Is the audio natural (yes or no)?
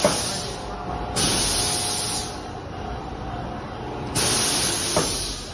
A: yes